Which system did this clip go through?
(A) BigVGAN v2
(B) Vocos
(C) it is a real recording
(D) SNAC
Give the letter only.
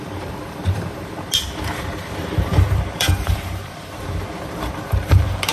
A